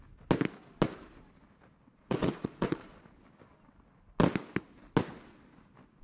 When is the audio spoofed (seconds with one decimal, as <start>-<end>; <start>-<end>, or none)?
1.9-3.1